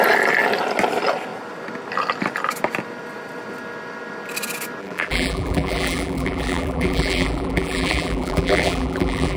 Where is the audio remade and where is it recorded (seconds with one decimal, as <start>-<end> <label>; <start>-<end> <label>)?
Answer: 0.0-4.8 recorded; 4.8-9.4 remade

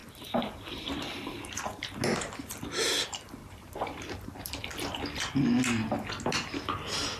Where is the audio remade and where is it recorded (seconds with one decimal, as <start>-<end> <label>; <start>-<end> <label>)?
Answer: 0.0-1.5 remade; 1.5-3.4 recorded; 3.4-5.0 remade; 5.0-7.2 recorded

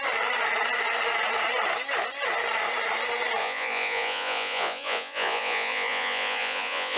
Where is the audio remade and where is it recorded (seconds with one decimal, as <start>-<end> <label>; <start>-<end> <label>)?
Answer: 0.0-3.4 recorded; 3.4-7.0 remade

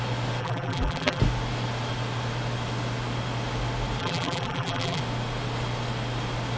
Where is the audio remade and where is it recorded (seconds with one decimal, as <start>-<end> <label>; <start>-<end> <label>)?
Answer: 0.0-0.4 recorded; 0.4-1.2 remade; 1.2-4.0 recorded; 4.0-5.0 remade; 5.0-6.6 recorded